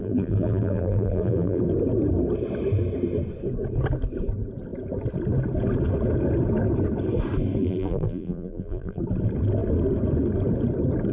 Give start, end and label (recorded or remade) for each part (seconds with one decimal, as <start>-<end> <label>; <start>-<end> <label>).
0.0-1.6 remade; 1.6-7.6 recorded; 7.6-9.0 remade; 9.0-11.1 recorded